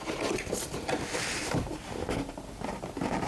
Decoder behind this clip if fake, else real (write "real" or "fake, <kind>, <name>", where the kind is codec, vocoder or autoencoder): real